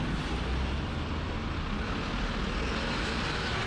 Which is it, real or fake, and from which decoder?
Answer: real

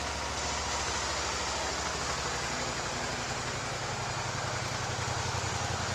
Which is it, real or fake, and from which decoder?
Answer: real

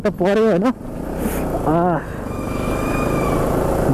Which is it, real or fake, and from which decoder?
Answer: real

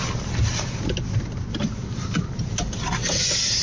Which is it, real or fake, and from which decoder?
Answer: real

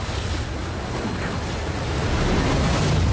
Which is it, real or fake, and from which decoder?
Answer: real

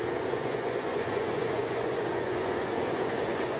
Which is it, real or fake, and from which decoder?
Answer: fake, vocoder, Vocos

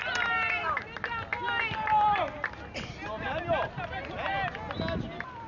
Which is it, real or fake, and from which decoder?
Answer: real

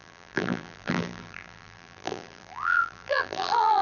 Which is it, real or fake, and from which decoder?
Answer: fake, vocoder, BigVGAN v2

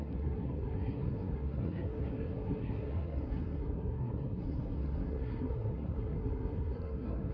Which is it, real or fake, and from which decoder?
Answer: fake, codec, SNAC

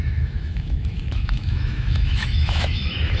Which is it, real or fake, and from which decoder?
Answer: fake, autoencoder, DAC-VAE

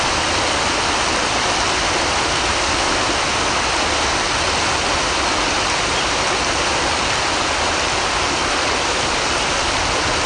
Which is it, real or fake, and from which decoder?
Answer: real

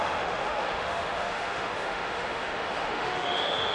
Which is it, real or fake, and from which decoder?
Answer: fake, autoencoder, DAC-VAE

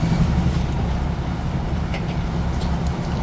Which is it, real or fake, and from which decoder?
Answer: fake, vocoder, BigVGAN v2